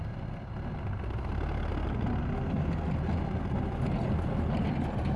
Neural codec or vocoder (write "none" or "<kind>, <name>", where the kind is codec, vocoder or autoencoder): none